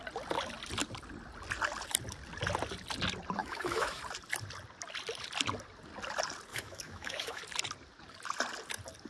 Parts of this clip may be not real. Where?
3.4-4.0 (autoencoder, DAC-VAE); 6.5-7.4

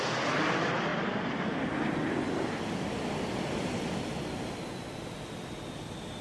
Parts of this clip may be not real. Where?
none